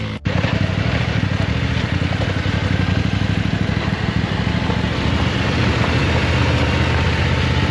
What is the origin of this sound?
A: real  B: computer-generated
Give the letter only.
A